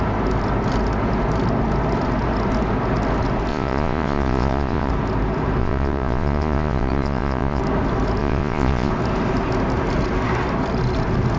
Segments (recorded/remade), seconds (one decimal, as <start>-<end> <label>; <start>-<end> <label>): 0.0-3.5 recorded; 3.5-4.9 remade; 4.9-5.6 recorded; 5.6-7.6 remade; 7.6-8.2 recorded; 8.2-8.9 remade; 8.9-11.4 recorded